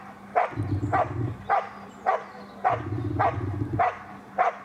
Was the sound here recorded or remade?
recorded